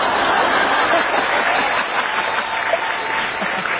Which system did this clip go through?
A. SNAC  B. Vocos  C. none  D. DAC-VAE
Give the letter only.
C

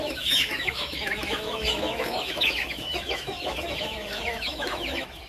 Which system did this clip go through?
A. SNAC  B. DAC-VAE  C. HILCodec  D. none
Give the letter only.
B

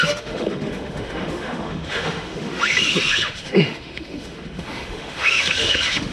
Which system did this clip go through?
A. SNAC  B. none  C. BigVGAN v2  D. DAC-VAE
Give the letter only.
D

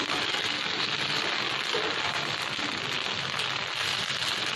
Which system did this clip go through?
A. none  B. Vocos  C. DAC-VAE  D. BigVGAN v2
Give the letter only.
A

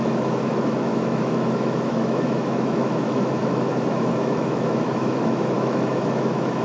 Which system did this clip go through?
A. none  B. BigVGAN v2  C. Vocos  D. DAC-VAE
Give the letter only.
D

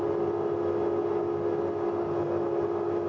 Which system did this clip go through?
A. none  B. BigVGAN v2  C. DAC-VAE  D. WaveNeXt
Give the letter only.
A